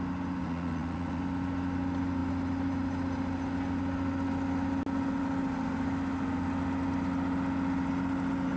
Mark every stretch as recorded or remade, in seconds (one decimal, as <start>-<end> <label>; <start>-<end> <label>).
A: 0.0-0.4 recorded; 0.4-1.2 remade; 1.2-8.6 recorded